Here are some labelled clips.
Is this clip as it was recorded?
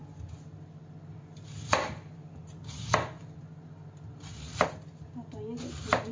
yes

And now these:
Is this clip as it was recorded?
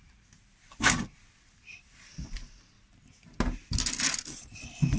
yes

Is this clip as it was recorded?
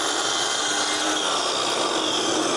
yes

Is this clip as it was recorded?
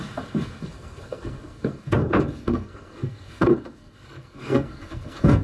no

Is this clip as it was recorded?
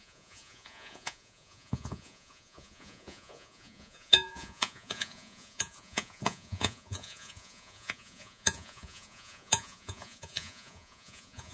no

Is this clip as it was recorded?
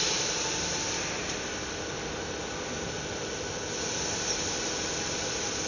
yes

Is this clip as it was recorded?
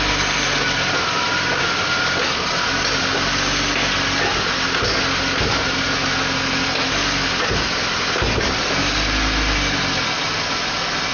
yes